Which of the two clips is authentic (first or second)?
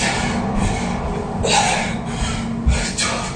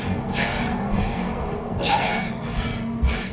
first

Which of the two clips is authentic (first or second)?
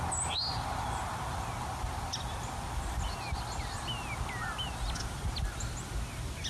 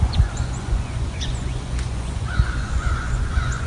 first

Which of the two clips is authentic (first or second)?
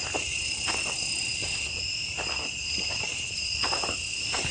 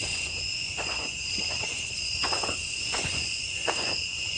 first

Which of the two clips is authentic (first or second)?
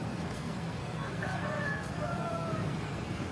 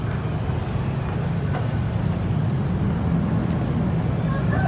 second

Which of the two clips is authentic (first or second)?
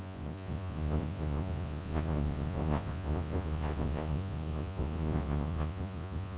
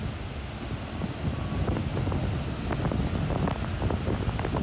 second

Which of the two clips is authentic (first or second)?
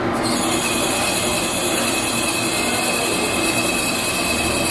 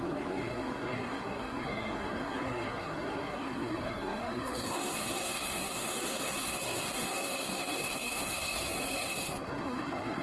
first